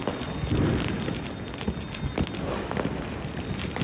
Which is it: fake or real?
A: real